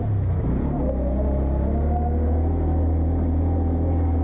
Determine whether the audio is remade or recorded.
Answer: recorded